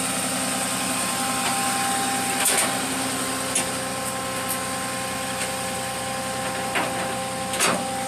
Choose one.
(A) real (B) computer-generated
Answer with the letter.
A